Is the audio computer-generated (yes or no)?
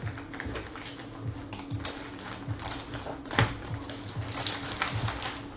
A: no